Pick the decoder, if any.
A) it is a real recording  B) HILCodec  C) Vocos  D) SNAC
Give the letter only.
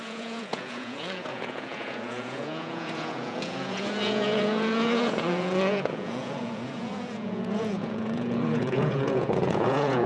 C